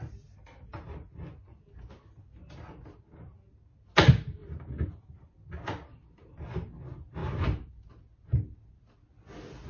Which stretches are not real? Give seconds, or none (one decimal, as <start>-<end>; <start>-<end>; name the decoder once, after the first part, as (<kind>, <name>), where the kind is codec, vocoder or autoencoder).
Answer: 4.4-5.1 (vocoder, BigVGAN v2)